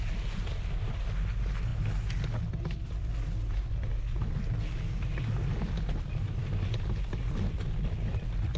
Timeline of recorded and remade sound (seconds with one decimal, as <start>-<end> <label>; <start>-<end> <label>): 0.0-8.6 recorded